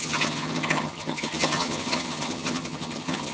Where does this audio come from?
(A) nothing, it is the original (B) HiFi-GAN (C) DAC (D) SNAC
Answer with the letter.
B